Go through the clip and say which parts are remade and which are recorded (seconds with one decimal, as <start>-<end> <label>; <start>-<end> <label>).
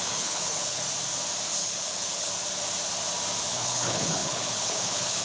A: 0.0-0.8 remade; 0.8-1.6 recorded; 1.6-2.3 remade; 2.3-3.4 recorded; 3.4-5.2 remade